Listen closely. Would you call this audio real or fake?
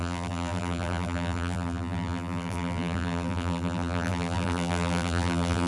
fake